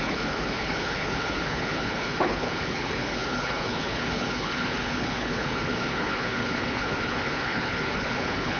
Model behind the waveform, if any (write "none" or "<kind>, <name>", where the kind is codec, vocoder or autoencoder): codec, HILCodec